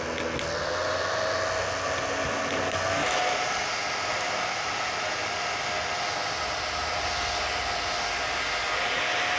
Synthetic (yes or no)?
no